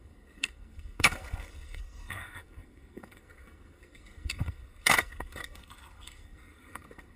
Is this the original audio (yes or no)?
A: no